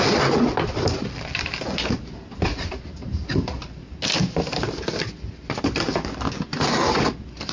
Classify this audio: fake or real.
real